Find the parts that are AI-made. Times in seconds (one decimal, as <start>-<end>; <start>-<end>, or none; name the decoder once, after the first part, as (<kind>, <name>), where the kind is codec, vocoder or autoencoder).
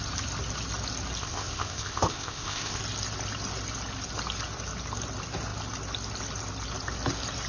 1.2-2.8 (codec, ZipCodec)